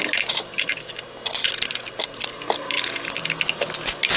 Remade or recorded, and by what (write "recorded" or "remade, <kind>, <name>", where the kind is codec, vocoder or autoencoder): recorded